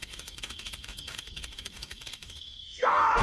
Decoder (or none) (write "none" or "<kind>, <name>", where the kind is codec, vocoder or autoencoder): codec, DAC